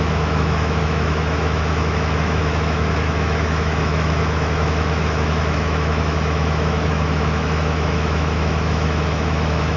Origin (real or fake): fake